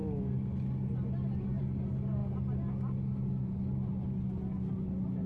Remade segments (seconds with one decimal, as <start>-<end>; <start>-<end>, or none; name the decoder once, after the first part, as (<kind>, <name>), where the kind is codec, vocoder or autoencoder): none